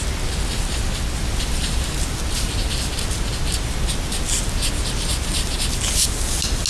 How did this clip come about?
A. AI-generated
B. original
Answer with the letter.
B